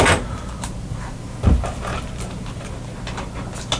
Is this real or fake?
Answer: real